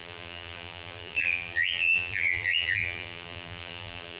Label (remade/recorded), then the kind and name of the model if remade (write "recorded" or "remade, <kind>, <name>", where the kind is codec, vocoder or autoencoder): remade, vocoder, BigVGAN v2